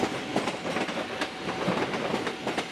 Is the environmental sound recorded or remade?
remade